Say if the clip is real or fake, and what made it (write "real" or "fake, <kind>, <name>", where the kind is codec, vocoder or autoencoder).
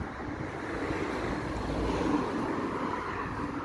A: real